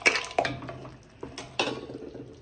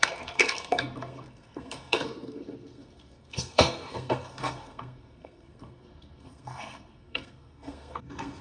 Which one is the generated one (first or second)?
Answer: second